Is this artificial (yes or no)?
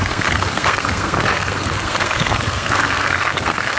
yes